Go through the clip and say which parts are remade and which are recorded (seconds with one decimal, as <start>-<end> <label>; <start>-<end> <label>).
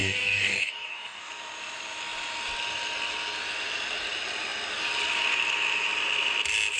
0.0-1.3 remade; 1.3-6.8 recorded